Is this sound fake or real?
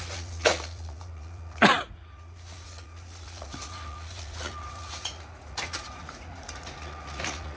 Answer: fake